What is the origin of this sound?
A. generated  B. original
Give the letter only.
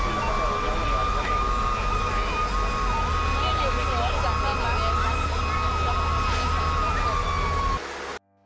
B